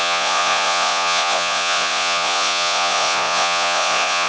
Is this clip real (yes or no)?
no